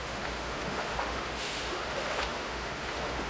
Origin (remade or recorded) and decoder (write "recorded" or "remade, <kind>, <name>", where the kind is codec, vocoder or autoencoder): remade, autoencoder, DAC-VAE